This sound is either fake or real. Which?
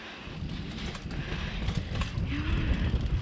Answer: real